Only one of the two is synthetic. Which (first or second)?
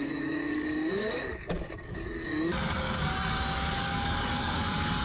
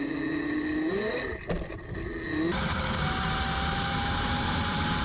first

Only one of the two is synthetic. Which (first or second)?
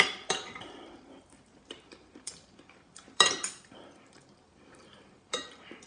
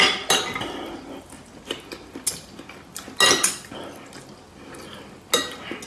first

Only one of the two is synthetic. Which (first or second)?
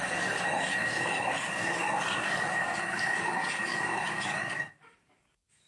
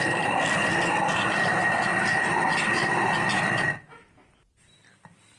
first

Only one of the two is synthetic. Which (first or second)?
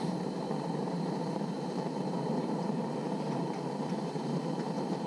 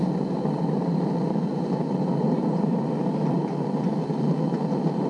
first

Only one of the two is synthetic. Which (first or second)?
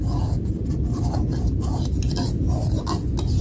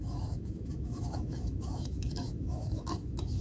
second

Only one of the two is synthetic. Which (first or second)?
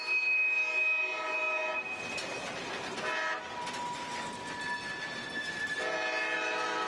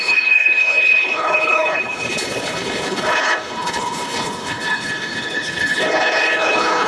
second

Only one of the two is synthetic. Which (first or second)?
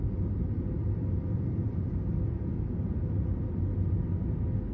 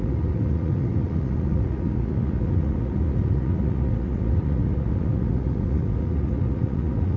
second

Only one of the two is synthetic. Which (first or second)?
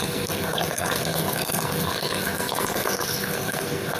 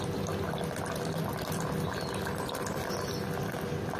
first